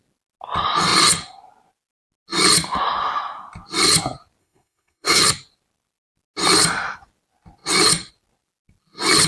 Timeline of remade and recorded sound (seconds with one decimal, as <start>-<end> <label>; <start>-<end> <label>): 0.0-4.4 recorded; 4.4-5.2 remade; 5.2-9.3 recorded